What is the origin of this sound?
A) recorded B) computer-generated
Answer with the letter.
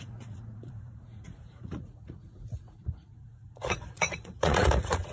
B